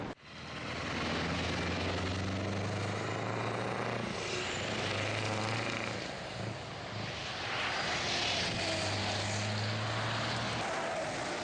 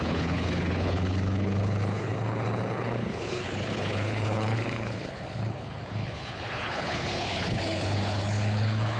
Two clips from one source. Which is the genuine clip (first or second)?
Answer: first